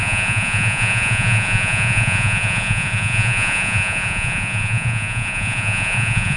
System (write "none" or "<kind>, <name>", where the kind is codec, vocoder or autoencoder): vocoder, Vocos